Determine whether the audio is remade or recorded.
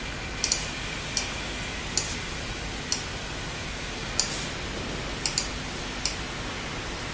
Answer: recorded